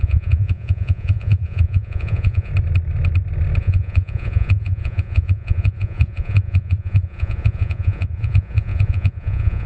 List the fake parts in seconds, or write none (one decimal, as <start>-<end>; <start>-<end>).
0.0-2.5; 3.6-9.7